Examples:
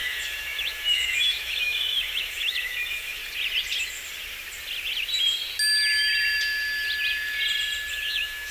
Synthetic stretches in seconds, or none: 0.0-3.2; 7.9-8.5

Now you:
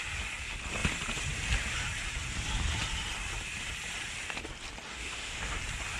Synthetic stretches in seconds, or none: 4.9-5.6